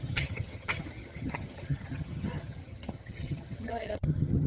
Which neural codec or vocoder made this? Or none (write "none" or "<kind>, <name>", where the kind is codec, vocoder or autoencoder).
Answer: vocoder, HiFi-GAN